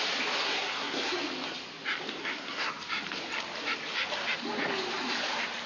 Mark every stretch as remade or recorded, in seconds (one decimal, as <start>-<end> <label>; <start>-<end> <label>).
0.0-0.4 recorded; 0.4-1.2 remade; 1.2-2.2 recorded; 2.2-2.7 remade; 2.7-5.7 recorded

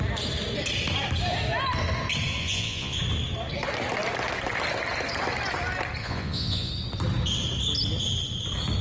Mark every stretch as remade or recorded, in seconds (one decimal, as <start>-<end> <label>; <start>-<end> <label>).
0.0-2.4 recorded; 2.4-3.0 remade; 3.0-6.0 recorded; 6.0-6.7 remade; 6.7-8.8 recorded

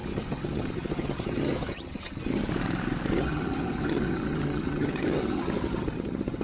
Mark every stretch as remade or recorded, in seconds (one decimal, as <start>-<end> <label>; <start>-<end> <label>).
0.0-2.4 remade; 2.4-3.2 recorded; 3.2-6.4 remade

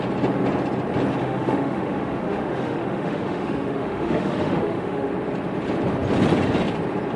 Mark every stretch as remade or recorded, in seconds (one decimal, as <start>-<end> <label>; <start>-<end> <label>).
0.0-1.2 recorded; 1.2-5.1 remade; 5.1-7.2 recorded

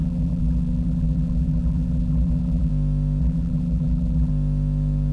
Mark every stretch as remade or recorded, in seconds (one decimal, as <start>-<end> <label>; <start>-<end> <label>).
0.0-2.7 remade; 2.7-3.2 recorded; 3.2-4.3 remade; 4.3-5.1 recorded

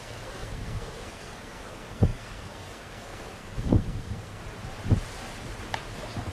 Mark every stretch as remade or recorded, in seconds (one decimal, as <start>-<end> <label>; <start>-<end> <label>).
0.0-4.4 remade; 4.4-6.3 recorded

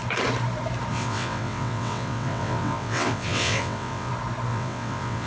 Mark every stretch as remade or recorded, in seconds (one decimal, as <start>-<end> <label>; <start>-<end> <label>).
0.0-0.9 recorded; 0.9-4.1 remade; 4.1-4.5 recorded; 4.5-5.3 remade

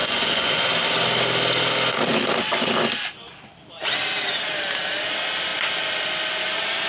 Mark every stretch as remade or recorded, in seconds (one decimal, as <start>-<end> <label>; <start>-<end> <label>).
0.0-0.6 remade; 0.6-6.9 recorded